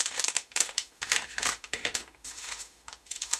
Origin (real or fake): fake